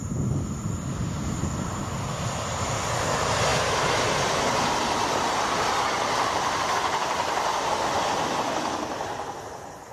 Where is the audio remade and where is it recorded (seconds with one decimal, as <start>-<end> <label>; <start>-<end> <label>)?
0.0-9.9 recorded